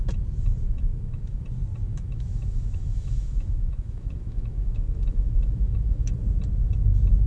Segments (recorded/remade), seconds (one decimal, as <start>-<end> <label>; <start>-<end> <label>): 0.0-0.9 recorded; 0.9-1.4 remade; 1.4-1.9 recorded; 1.9-6.1 remade; 6.1-7.3 recorded